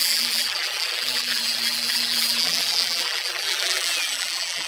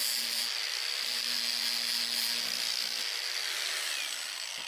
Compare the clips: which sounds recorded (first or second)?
second